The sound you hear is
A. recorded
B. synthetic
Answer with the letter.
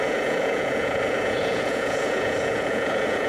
B